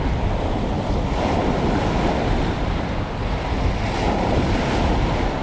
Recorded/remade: recorded